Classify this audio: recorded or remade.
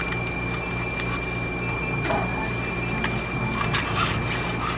recorded